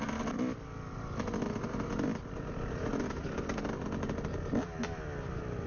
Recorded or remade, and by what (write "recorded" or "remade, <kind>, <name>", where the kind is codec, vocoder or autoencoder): recorded